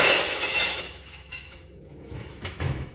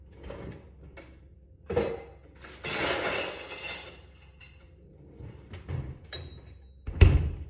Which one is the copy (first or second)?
first